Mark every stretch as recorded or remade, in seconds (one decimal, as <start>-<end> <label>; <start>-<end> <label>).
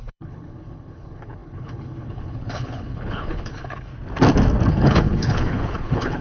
0.0-3.9 remade; 3.9-4.7 recorded; 4.7-6.2 remade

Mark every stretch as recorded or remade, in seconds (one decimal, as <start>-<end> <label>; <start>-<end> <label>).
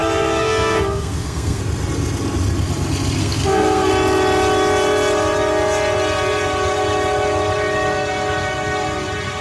0.0-1.6 remade; 1.6-3.2 recorded; 3.2-3.9 remade; 3.9-9.4 recorded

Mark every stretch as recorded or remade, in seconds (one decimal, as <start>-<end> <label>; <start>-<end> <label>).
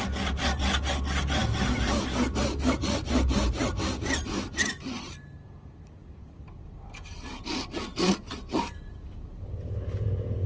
0.0-7.9 recorded; 7.9-10.1 remade; 10.1-10.5 recorded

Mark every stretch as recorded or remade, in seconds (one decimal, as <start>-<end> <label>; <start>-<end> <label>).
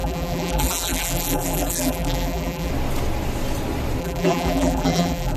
0.0-2.7 remade; 2.7-4.0 recorded; 4.0-5.4 remade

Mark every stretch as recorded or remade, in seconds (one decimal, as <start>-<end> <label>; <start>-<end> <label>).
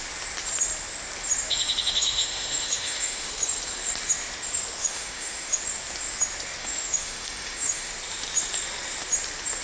0.0-1.5 recorded; 1.5-3.3 remade; 3.3-4.8 recorded; 4.8-5.6 remade; 5.6-6.6 recorded; 6.6-7.9 remade; 7.9-9.6 recorded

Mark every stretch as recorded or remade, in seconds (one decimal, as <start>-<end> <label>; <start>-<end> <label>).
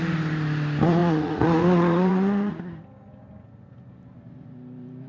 0.0-1.0 recorded; 1.0-2.6 remade; 2.6-5.1 recorded